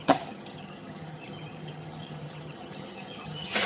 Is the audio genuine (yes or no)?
no